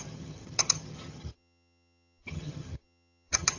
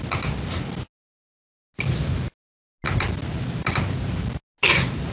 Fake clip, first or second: first